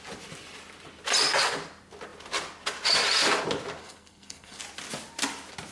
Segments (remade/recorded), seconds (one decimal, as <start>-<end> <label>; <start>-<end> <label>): 0.0-3.8 recorded; 3.8-4.6 remade; 4.6-5.7 recorded

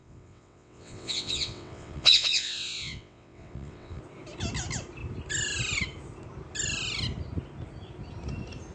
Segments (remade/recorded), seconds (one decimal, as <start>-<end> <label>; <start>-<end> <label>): 0.0-4.0 remade; 4.0-8.7 recorded

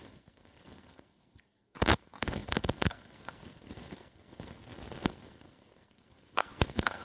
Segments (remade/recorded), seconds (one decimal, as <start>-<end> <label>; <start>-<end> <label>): 0.0-7.0 remade

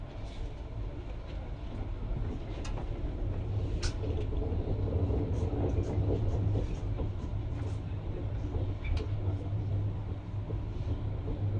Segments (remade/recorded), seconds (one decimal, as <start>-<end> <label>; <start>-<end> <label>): 0.0-11.6 recorded

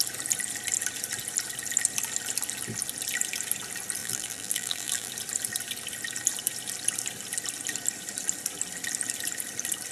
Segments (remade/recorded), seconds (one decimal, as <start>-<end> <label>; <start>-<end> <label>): 0.0-4.0 recorded; 4.0-5.1 remade; 5.1-9.9 recorded

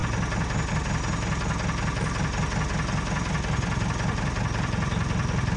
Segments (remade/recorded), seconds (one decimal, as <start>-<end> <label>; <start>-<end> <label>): 0.0-5.6 recorded